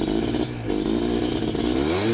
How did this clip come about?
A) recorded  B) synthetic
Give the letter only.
A